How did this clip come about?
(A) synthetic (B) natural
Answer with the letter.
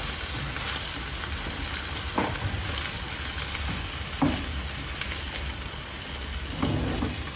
B